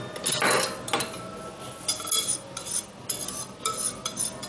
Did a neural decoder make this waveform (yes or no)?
no